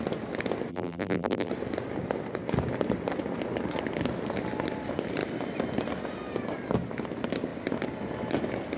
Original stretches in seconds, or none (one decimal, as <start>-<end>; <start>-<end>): 0.0-0.7; 1.5-8.8